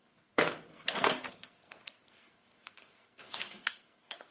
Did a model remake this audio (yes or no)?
yes